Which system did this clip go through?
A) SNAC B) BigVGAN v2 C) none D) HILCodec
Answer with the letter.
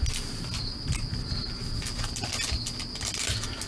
C